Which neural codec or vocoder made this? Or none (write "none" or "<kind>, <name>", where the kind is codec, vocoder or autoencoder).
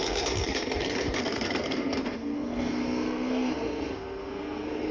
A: codec, SNAC